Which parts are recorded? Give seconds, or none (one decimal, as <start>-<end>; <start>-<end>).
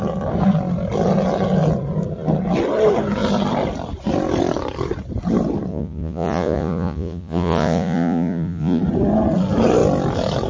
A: 0.0-5.7; 8.8-10.5